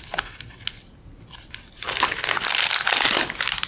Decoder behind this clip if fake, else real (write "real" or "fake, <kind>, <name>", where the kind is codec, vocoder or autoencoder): real